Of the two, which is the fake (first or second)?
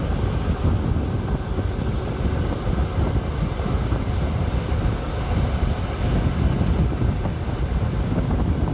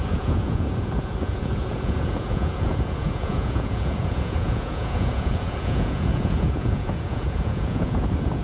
second